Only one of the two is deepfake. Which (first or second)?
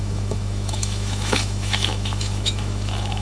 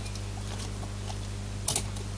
first